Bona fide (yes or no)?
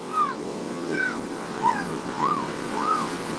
no